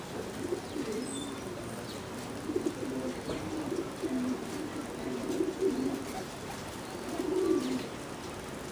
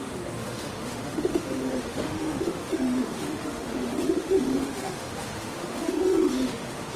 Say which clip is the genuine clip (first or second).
first